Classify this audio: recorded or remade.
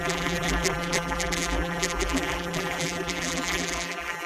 remade